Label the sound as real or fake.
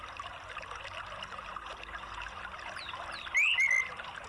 real